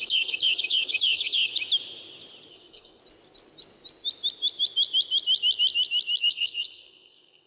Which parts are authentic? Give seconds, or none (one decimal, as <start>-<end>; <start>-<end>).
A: 1.5-2.5; 3.0-6.2